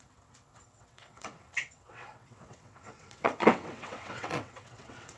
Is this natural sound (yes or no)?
no